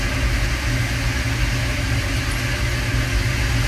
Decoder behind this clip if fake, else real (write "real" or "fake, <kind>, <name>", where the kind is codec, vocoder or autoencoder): real